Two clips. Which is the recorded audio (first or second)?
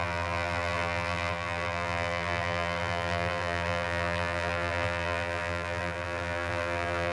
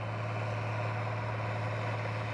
second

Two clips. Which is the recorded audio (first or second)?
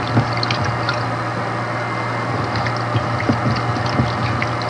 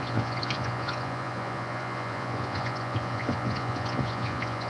first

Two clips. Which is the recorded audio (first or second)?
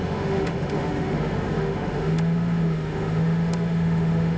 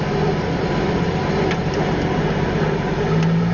second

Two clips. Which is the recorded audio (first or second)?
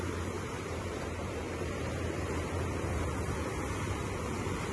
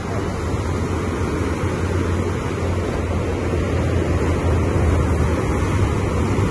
second